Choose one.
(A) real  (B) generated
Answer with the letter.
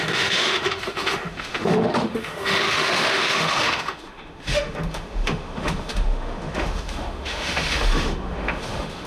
B